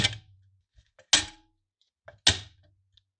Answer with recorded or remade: recorded